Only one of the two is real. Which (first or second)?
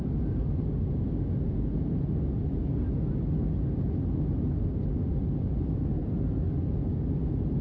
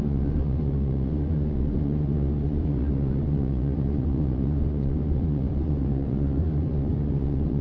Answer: first